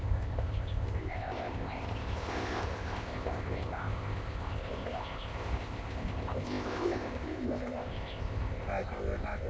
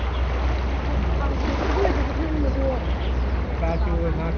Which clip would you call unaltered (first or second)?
second